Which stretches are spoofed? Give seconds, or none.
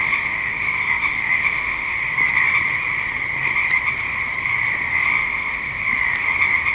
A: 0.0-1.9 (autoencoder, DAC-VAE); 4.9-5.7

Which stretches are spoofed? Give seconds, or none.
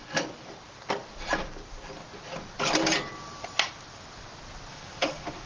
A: 4.7-5.5 (autoencoder, DAC-VAE)